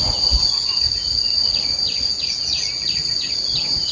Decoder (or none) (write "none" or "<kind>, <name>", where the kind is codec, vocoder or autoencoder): none